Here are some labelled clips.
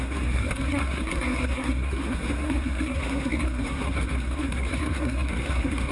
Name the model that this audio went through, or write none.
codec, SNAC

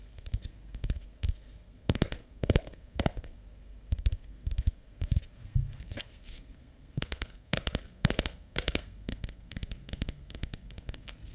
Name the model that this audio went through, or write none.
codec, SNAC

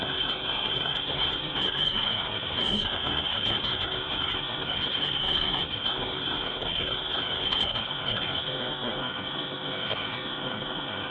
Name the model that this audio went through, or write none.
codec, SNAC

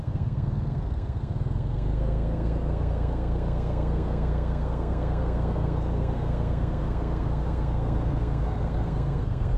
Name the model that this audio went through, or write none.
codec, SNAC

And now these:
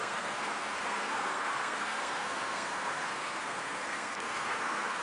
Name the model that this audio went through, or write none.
codec, SNAC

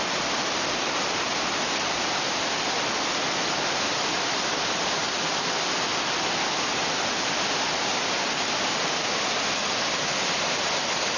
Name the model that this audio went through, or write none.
none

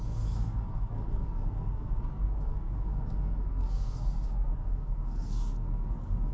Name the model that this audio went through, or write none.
codec, SNAC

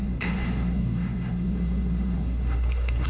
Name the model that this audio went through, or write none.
codec, SNAC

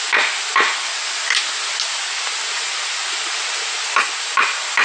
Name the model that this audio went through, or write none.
none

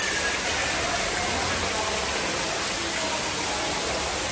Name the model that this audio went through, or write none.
none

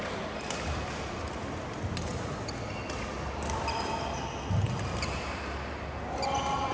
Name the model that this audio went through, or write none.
none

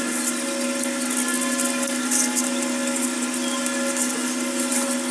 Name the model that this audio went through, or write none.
none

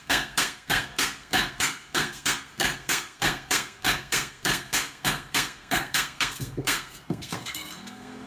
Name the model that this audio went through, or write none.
codec, SNAC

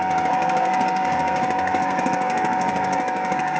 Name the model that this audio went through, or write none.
codec, SNAC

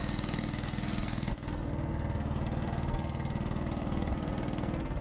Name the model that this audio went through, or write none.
codec, SNAC